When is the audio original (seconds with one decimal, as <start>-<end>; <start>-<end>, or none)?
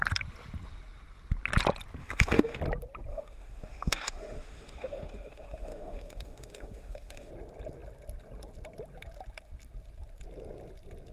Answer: 0.0-2.0; 2.6-3.1; 7.3-11.1